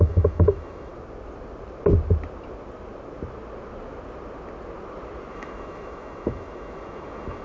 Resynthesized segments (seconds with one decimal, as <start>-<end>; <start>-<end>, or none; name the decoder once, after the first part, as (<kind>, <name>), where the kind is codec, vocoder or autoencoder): 0.0-0.9 (autoencoder, DAC-VAE); 5.3-7.4